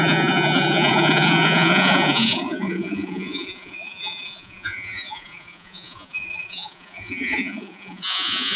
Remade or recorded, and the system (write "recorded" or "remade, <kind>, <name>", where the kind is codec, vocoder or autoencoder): remade, vocoder, Vocos